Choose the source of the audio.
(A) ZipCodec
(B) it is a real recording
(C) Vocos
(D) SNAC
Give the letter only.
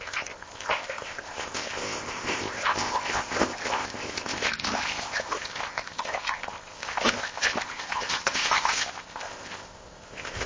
A